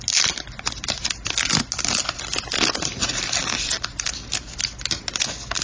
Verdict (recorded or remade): recorded